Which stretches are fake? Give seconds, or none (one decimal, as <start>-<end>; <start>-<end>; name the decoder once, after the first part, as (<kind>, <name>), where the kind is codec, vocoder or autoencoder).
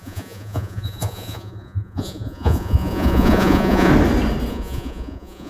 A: 0.0-3.9 (vocoder, Vocos); 4.5-5.5